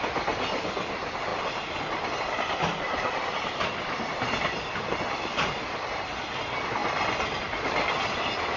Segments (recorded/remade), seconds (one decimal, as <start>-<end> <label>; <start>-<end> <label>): 0.0-8.6 recorded